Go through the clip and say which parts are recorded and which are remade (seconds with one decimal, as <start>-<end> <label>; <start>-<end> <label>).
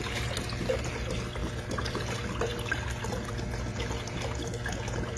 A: 0.0-5.2 recorded